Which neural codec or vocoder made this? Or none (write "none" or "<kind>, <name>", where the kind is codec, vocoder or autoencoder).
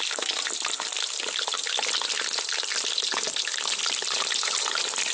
none